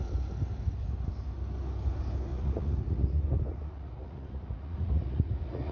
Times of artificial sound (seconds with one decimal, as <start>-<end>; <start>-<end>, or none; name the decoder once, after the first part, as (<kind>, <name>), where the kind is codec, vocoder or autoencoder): 2.3-5.7 (vocoder, Vocos)